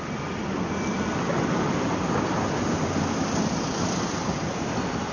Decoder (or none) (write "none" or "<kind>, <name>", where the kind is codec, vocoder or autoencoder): none